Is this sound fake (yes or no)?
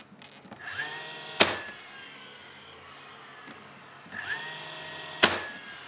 no